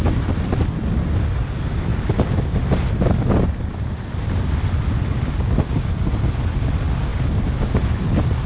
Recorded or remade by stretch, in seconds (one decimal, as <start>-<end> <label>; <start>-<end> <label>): 0.0-8.5 recorded